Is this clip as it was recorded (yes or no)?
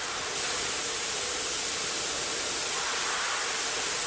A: yes